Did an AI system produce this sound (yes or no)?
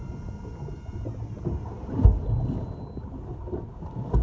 no